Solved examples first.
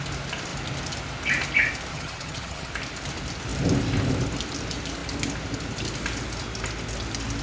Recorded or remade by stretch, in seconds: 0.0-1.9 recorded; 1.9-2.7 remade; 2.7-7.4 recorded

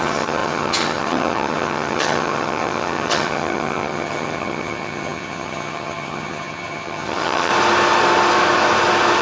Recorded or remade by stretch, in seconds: 0.0-7.5 remade; 7.5-9.2 recorded